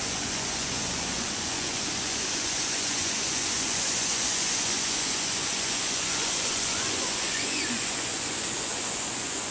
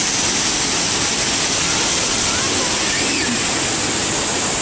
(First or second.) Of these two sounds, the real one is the second